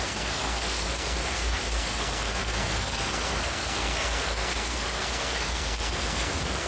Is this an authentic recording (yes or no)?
no